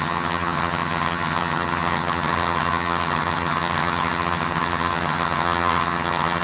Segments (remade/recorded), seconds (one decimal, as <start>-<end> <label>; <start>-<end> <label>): 0.0-6.4 remade